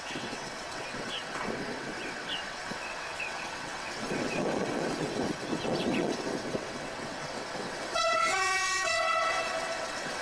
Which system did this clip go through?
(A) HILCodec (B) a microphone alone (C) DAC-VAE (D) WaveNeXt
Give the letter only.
D